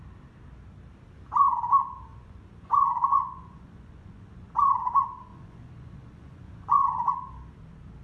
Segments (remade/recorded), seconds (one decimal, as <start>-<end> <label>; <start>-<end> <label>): 0.0-2.1 recorded; 2.1-4.5 remade; 4.5-5.3 recorded; 5.3-7.1 remade; 7.1-8.0 recorded